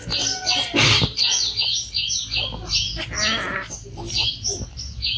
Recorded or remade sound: recorded